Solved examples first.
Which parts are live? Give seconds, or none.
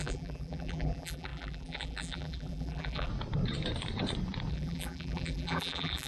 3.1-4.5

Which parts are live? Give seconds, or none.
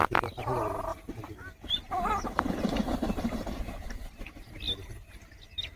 0.0-0.9; 3.6-5.8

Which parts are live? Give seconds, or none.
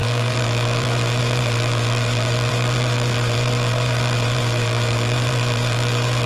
none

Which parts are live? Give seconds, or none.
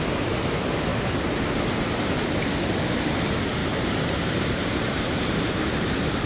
0.0-3.6; 5.3-6.3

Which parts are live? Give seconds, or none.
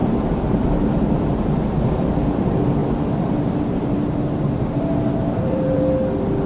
1.6-2.8; 5.8-6.5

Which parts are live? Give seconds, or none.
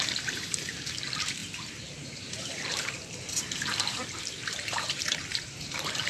none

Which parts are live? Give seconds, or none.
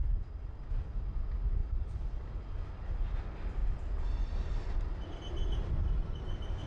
0.0-1.6; 2.3-6.7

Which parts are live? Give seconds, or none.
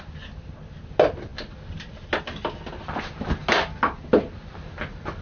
0.0-1.3; 2.2-5.2